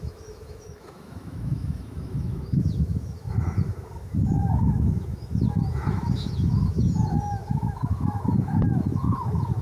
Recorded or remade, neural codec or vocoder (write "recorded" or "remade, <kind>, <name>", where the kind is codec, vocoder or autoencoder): remade, autoencoder, DAC-VAE